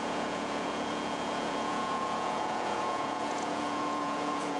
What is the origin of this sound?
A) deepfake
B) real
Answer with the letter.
A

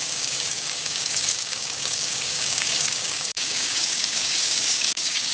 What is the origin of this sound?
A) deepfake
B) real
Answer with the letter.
A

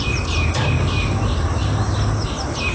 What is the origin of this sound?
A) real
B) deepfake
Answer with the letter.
A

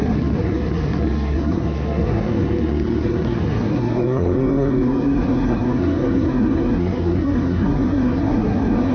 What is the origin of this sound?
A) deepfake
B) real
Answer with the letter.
A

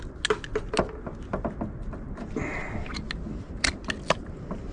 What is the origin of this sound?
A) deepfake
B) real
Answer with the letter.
B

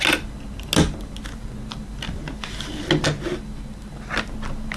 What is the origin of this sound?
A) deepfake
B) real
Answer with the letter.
B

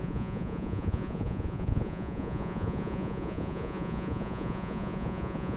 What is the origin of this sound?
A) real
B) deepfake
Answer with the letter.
B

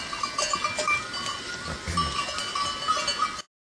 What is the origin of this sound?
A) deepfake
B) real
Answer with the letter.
B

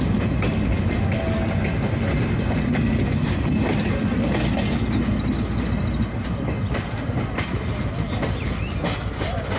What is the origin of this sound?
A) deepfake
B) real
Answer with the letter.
B